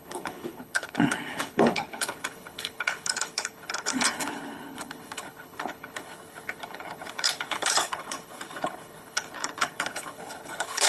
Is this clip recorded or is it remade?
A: remade